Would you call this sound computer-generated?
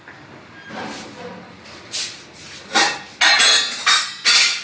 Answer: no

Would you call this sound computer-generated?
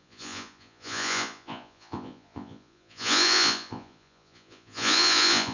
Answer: yes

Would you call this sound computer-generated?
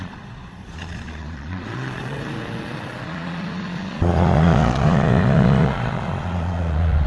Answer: yes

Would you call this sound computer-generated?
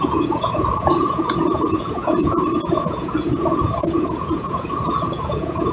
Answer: yes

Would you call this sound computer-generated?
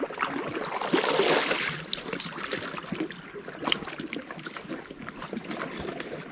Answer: no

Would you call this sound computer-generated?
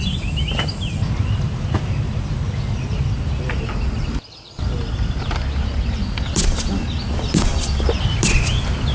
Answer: no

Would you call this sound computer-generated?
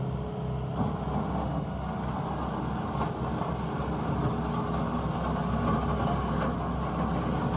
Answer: no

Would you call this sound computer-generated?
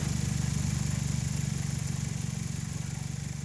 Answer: no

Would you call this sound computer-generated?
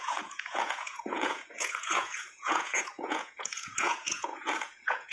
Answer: yes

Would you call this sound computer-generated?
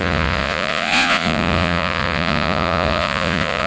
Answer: yes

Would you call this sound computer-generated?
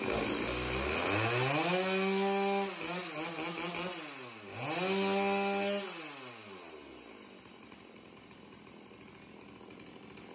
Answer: no